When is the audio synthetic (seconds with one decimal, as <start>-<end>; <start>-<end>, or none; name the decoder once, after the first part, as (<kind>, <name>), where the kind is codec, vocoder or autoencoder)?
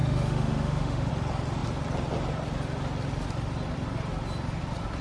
0.0-1.1 (autoencoder, DAC-VAE)